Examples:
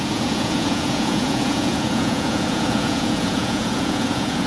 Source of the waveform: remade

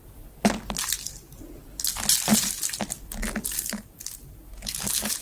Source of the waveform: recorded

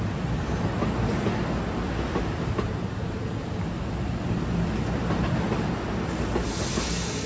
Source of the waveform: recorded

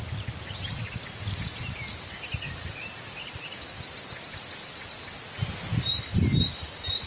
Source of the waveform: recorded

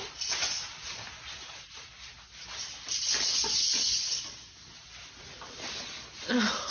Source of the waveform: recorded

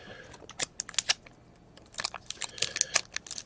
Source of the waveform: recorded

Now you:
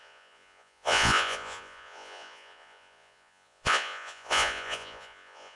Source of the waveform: remade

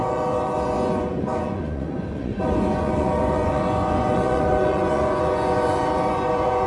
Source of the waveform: remade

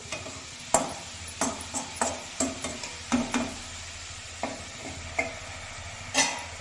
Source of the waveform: recorded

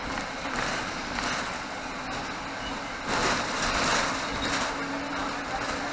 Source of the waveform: recorded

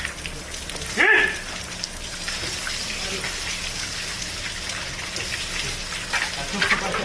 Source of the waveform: recorded